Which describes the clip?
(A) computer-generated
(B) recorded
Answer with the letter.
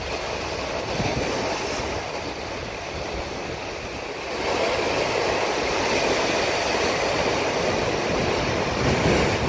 B